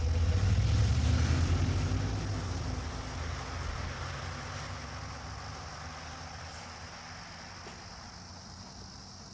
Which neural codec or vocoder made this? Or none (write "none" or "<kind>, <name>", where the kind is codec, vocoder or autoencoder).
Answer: none